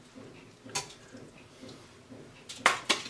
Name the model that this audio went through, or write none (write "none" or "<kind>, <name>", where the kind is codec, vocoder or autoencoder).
none